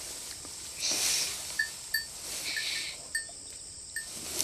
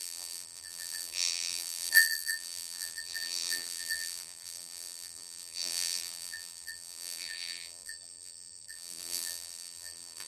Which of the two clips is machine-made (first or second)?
second